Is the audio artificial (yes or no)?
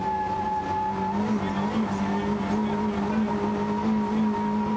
no